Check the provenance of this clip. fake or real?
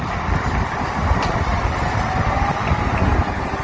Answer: real